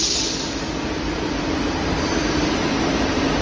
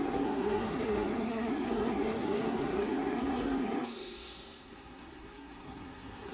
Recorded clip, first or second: first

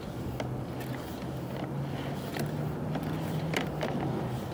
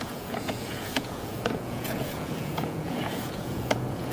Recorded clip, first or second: first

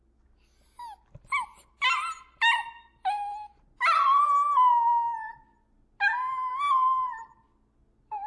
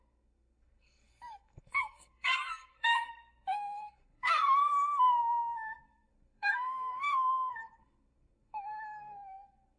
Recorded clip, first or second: first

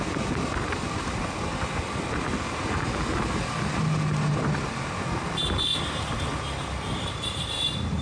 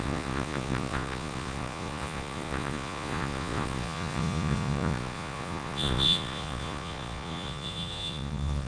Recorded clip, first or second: first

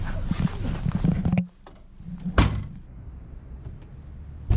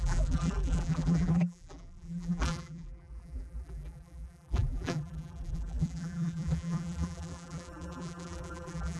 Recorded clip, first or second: first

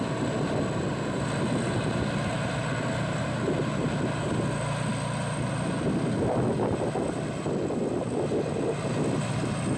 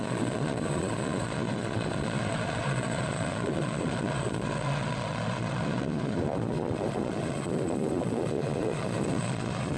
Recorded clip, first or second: first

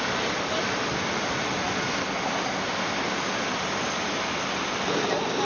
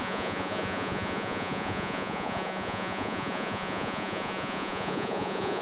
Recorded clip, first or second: first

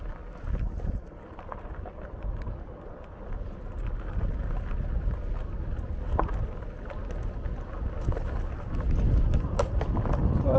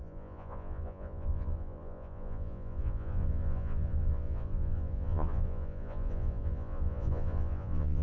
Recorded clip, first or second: first